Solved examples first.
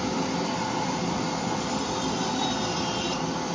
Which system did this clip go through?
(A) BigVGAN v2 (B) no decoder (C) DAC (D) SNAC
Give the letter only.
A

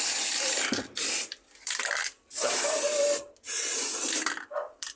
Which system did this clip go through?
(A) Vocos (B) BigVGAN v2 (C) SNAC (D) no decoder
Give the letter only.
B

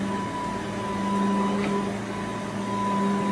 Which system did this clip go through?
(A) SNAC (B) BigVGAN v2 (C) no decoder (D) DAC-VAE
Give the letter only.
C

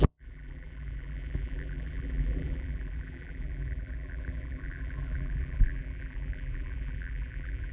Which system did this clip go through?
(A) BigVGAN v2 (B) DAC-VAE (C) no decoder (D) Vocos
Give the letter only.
A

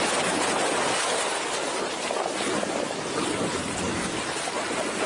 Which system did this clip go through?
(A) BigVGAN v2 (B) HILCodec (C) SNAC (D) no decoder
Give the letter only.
D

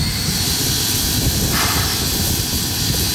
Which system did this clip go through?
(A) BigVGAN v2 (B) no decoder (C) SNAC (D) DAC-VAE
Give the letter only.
A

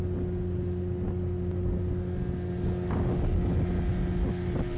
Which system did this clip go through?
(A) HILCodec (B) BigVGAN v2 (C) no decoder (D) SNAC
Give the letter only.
C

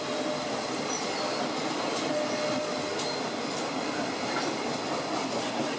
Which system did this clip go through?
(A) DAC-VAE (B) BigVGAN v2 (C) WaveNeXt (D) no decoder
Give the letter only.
D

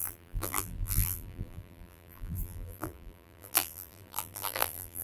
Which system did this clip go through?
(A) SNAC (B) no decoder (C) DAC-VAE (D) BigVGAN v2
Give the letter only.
D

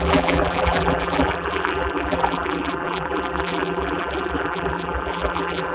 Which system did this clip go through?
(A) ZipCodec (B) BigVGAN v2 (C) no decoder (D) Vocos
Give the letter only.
B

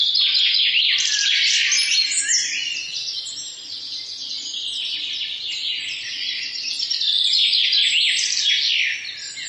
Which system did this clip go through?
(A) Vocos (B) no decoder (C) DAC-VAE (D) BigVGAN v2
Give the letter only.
B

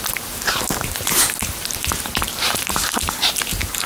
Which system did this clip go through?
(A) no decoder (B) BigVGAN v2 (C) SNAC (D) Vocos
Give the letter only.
B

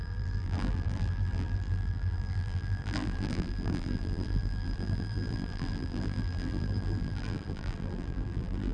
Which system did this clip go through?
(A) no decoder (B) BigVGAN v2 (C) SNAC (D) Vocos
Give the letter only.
B